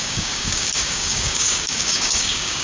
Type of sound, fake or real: fake